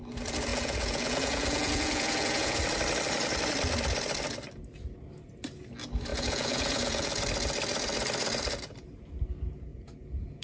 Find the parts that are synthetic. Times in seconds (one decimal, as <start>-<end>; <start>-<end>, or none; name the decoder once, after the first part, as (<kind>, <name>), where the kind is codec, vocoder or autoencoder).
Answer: 0.5-2.6 (vocoder, Vocos); 6.1-7.2; 9.7-10.4